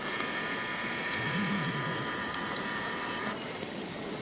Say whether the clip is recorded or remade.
recorded